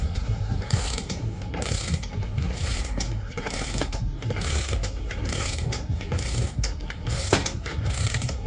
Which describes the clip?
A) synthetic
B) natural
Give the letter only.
A